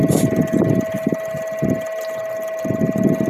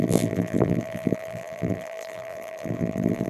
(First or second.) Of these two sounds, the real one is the first